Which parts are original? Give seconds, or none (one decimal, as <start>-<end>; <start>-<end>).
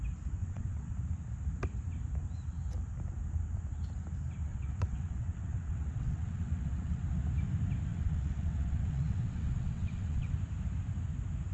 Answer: 0.0-0.4; 0.9-4.5; 7.0-7.9; 10.3-11.5